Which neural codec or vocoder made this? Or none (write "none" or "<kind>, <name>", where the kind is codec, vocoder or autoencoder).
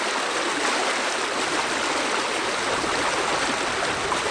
none